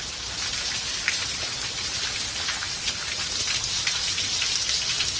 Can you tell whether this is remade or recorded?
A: recorded